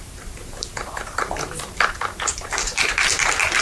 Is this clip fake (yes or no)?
yes